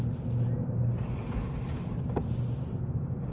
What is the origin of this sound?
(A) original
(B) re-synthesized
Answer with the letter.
A